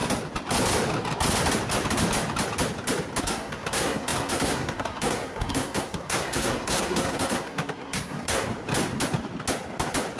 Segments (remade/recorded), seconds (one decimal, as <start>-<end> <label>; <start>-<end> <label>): 0.0-3.2 recorded; 3.2-8.5 remade; 8.5-10.2 recorded